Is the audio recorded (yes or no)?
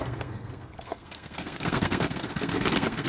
no